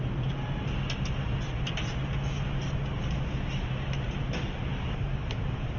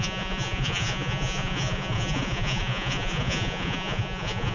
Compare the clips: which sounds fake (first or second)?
second